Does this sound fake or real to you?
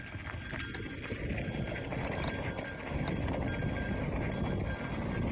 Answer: real